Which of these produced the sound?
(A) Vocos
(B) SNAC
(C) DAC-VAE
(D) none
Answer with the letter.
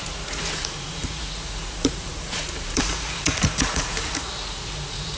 A